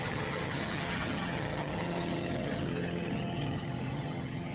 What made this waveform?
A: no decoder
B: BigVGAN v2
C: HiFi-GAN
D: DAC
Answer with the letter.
C